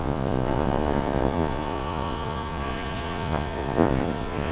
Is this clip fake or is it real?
fake